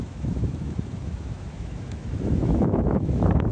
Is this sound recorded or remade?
remade